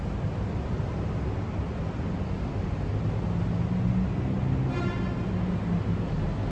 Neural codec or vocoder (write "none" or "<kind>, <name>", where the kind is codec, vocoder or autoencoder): none